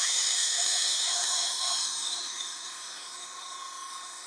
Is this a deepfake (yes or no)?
yes